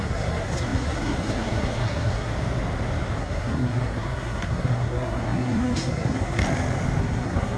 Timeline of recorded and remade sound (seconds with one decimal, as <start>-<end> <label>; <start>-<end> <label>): 0.0-2.3 remade; 2.3-3.2 recorded; 3.2-6.4 remade; 6.4-7.0 recorded; 7.0-7.6 remade